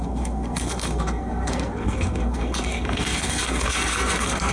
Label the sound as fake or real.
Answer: fake